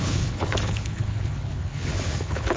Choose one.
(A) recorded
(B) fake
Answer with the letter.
B